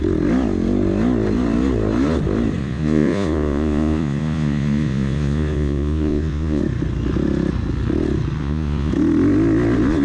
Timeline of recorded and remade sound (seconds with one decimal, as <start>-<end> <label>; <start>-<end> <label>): 0.0-2.6 recorded; 2.6-6.6 remade; 6.6-8.4 recorded; 8.4-8.9 remade; 8.9-10.0 recorded